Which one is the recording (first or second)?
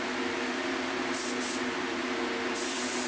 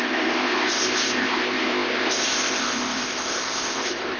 first